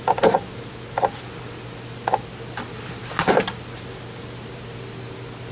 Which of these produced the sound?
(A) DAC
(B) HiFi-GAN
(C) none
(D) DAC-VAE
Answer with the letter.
C